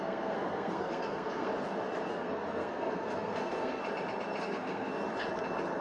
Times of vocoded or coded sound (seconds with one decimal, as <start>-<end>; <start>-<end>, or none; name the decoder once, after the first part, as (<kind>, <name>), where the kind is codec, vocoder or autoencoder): 0.0-1.5 (codec, SNAC); 2.1-3.8; 4.4-4.9